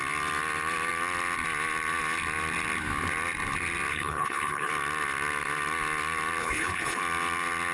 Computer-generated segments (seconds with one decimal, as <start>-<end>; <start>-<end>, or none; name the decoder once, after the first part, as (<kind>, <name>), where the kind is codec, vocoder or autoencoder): 3.9-4.7 (codec, HILCodec); 6.4-7.0